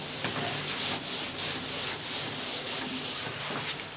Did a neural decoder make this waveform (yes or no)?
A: no